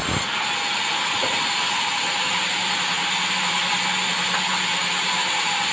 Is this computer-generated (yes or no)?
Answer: no